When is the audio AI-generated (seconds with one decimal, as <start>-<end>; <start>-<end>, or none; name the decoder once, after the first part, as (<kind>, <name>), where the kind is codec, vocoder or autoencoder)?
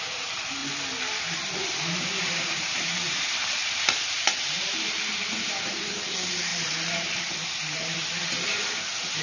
0.0-0.6 (vocoder, BigVGAN v2); 2.2-3.6; 4.1-9.2